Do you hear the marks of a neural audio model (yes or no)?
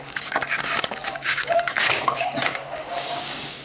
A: yes